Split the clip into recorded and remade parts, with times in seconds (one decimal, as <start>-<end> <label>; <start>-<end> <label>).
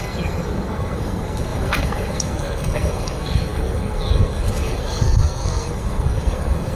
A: 0.0-6.8 remade